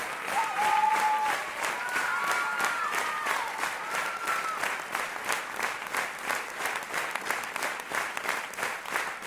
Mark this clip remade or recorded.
recorded